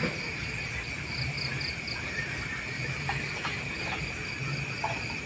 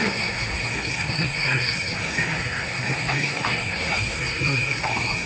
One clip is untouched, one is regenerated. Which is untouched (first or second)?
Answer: first